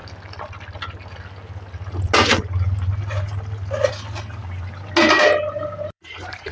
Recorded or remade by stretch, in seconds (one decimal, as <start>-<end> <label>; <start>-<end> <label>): 0.0-4.4 recorded; 4.4-4.9 remade; 4.9-5.6 recorded; 5.6-6.5 remade